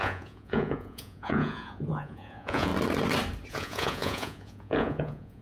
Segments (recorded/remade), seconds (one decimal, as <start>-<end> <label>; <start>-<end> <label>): 0.0-2.7 remade; 2.7-3.5 recorded; 3.5-5.4 remade